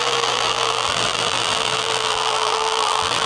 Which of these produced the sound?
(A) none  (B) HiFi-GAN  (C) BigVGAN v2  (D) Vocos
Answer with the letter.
C